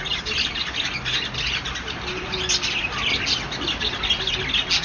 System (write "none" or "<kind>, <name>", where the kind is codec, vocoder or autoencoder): none